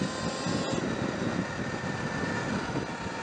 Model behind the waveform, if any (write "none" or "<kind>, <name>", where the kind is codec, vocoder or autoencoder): none